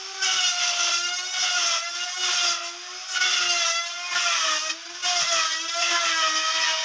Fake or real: real